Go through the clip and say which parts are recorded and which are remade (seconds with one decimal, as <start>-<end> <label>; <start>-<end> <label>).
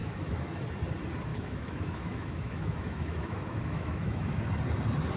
0.0-0.6 remade; 0.6-1.3 recorded; 1.3-4.4 remade; 4.4-5.2 recorded